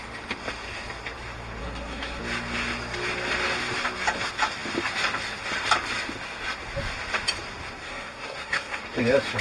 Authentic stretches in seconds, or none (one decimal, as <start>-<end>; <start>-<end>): 0.0-1.6; 2.2-7.8; 8.8-9.4

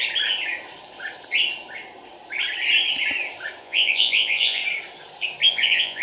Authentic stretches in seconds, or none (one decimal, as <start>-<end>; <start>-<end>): 0.0-3.6; 4.6-5.5

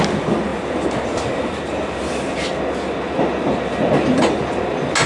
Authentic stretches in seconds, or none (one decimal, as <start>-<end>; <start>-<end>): 0.0-0.5; 2.0-5.1